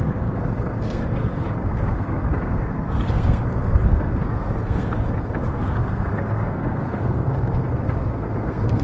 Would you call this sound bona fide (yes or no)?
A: no